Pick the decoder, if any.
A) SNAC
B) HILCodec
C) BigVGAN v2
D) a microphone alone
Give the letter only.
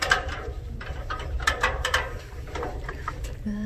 C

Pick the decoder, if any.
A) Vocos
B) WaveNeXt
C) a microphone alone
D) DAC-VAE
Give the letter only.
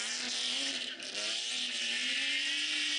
C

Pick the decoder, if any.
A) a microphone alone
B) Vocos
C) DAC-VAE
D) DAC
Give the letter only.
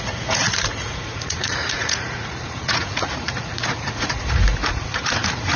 B